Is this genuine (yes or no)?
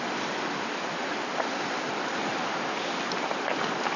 yes